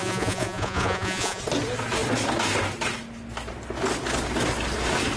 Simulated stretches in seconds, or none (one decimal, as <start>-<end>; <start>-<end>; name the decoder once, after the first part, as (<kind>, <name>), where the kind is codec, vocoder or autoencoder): 0.0-1.4 (vocoder, Vocos)